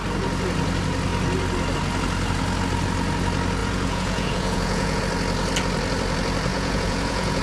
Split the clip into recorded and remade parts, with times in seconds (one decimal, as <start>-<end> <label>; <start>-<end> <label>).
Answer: 0.0-3.6 recorded; 3.6-5.0 remade; 5.0-6.5 recorded; 6.5-7.4 remade